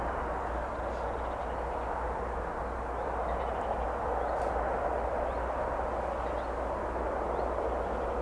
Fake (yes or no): no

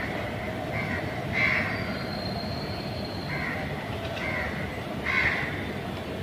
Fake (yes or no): no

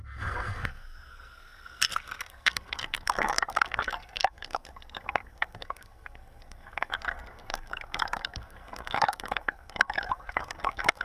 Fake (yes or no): yes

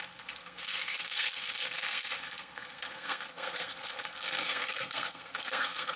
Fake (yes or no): yes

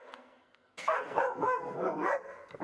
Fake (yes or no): yes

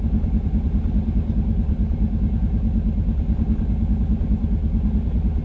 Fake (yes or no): no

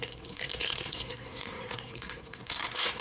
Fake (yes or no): yes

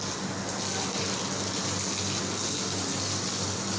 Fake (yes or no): no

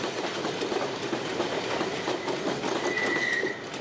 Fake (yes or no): no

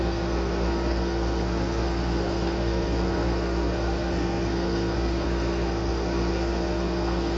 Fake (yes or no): yes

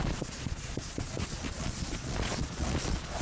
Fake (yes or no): yes